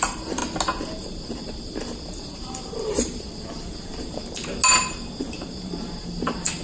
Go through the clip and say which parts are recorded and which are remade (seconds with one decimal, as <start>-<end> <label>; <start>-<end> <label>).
0.0-0.4 remade; 0.4-1.0 recorded; 1.0-4.2 remade; 4.2-5.2 recorded; 5.2-6.6 remade